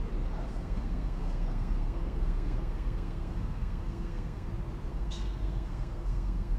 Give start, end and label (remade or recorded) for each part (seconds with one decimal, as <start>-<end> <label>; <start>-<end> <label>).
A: 0.0-0.5 recorded; 0.5-4.5 remade; 4.5-4.9 recorded; 4.9-6.6 remade